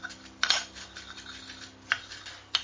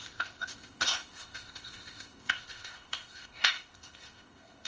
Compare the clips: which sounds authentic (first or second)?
first